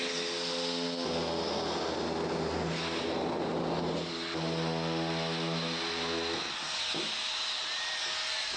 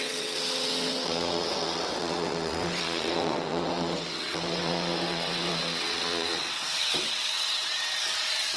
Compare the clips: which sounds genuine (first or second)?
first